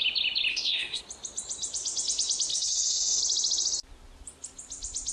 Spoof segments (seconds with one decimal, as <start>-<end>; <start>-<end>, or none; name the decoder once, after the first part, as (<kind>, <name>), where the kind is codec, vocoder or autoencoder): 0.5-1.0 (codec, SNAC); 2.5-3.2